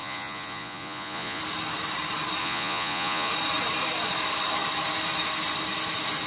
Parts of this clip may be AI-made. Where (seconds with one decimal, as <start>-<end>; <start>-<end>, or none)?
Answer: 0.0-1.4; 2.4-3.3